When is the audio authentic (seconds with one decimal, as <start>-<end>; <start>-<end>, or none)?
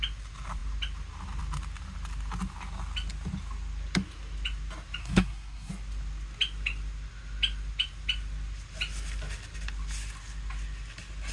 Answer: 0.0-5.0; 5.7-11.3